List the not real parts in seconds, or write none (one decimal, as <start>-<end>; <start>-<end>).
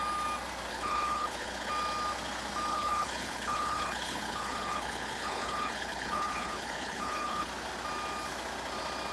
0.7-1.7; 2.7-7.5